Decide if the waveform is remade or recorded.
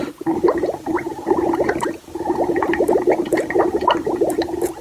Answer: remade